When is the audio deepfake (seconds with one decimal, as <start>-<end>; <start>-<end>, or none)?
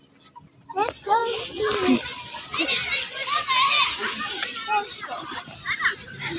none